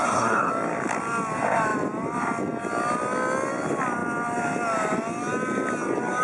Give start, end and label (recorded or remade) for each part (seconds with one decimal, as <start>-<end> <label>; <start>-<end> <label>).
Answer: 0.0-0.5 remade; 0.5-6.2 recorded